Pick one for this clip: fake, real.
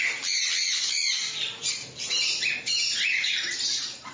fake